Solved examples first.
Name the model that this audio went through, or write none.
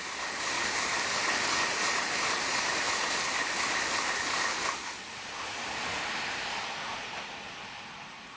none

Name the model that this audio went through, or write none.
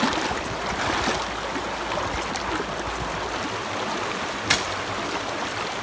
none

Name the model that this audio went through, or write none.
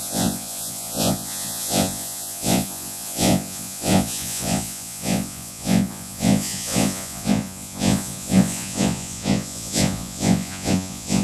vocoder, Vocos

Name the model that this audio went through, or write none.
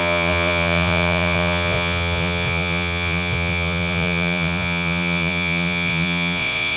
vocoder, Vocos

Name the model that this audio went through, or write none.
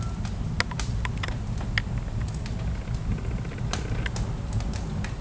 none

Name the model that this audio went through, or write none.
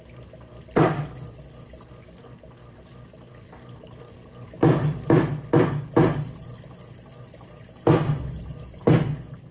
none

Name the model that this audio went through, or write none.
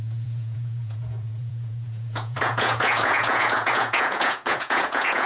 vocoder, Vocos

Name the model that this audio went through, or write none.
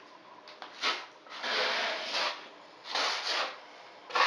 none